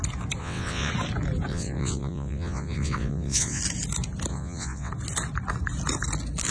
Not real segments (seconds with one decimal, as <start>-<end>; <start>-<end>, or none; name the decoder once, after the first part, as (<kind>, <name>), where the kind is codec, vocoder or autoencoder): 0.4-0.9 (vocoder, WaveNeXt); 1.5-3.6; 4.3-4.9